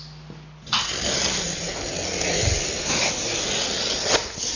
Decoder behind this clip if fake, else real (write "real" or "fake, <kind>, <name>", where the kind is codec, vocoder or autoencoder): real